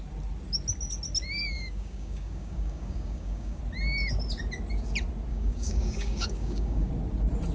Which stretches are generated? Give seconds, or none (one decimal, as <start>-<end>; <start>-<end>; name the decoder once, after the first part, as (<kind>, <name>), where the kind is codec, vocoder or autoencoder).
1.4-3.6 (codec, DAC); 5.3-6.9